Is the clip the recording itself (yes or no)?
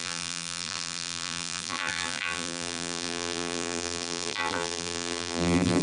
no